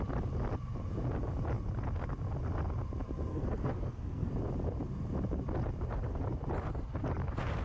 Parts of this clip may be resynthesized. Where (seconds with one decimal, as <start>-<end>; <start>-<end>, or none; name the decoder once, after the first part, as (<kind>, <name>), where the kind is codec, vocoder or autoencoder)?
3.3-4.3 (codec, SNAC)